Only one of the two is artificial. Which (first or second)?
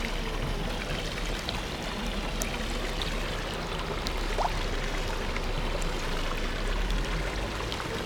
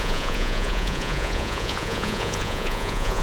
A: second